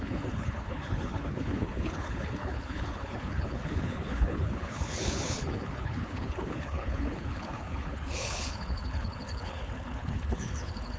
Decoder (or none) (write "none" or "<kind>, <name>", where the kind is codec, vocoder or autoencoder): codec, HILCodec